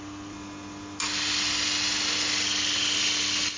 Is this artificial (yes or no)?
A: no